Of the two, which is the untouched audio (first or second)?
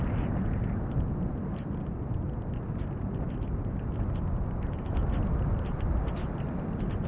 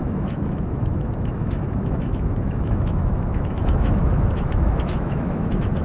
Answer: first